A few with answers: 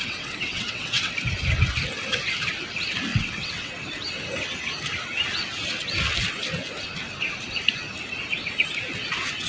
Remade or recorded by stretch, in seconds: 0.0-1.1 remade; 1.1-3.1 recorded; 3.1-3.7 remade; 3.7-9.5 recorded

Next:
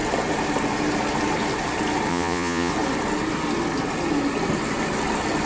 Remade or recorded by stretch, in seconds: 0.0-2.1 recorded; 2.1-2.7 remade; 2.7-5.5 recorded

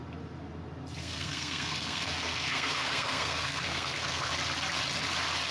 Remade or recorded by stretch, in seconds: 0.0-1.0 recorded; 1.0-4.3 remade; 4.3-5.5 recorded

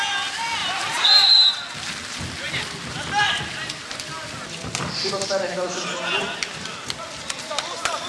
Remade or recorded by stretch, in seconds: 0.0-0.6 recorded; 0.6-1.5 remade; 1.5-8.1 recorded

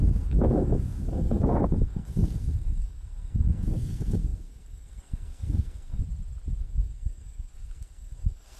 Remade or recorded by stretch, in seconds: 0.0-6.0 remade; 6.0-6.6 recorded; 6.6-8.6 remade

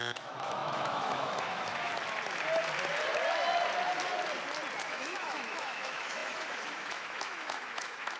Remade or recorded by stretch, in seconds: 0.0-1.9 remade; 1.9-4.9 recorded; 4.9-8.2 remade

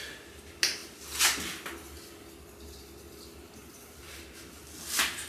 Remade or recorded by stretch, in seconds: 0.0-5.3 recorded

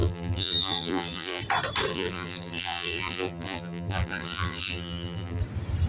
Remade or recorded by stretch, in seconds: 0.0-1.4 remade; 1.4-1.9 recorded; 1.9-5.4 remade; 5.4-5.9 recorded